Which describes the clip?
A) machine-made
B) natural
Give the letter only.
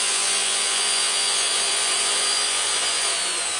A